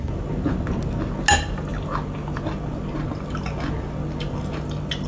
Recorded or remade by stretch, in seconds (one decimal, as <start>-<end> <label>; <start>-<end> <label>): 0.0-5.1 recorded